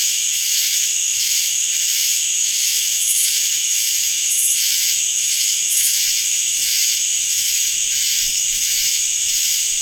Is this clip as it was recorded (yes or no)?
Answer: no